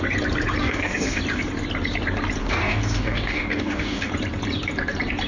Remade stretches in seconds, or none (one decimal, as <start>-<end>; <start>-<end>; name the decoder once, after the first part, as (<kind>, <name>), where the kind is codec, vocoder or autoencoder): 0.6-1.2 (codec, DAC); 2.4-4.1